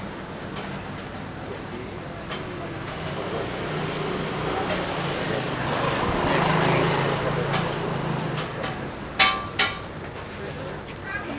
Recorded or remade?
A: recorded